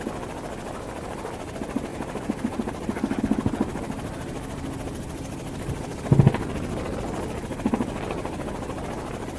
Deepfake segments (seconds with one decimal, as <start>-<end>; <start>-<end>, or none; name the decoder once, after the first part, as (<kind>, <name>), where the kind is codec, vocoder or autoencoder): 1.9-3.2 (vocoder, BigVGAN v2)